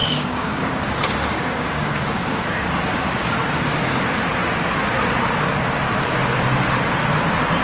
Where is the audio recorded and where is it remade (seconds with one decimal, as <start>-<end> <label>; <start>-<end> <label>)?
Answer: 0.0-3.0 remade; 3.0-7.6 recorded